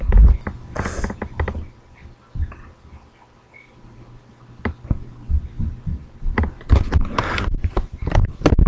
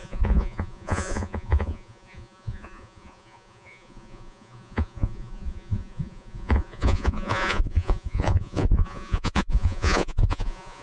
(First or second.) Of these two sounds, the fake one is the second